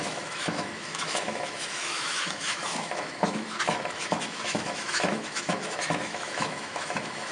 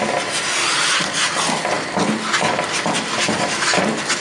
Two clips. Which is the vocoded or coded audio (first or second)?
first